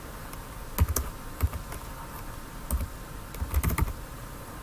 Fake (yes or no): no